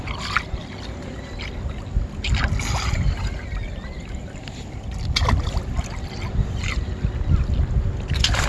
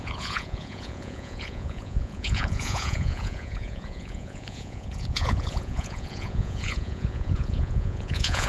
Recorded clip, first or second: first